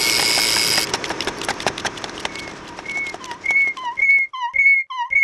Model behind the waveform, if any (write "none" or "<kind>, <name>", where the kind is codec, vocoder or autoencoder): none